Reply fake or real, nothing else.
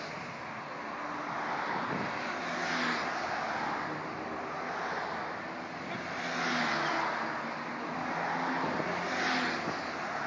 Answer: real